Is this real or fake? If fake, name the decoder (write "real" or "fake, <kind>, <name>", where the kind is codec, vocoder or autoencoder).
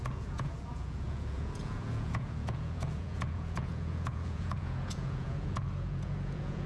fake, vocoder, Vocos